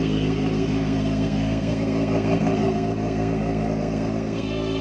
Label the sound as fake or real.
fake